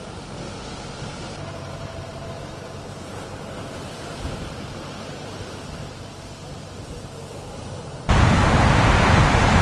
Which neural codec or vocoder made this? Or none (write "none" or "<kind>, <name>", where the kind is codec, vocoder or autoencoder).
vocoder, BigVGAN v2